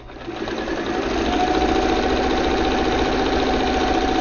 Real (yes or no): yes